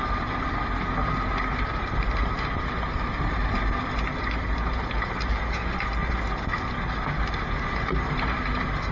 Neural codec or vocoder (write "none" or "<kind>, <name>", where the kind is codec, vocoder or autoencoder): none